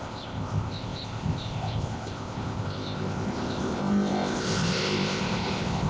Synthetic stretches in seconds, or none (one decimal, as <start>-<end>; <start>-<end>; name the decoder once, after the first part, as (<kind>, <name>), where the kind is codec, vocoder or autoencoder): 0.0-5.9 (codec, ZipCodec)